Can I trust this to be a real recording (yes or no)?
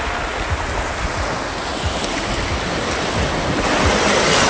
yes